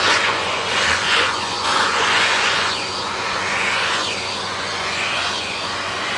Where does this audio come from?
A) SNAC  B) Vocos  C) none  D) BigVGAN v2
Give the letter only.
B